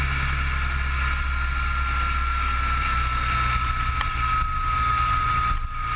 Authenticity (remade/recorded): recorded